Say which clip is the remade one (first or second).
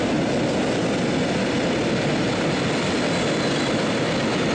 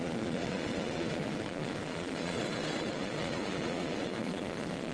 second